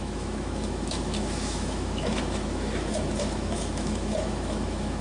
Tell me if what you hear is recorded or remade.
remade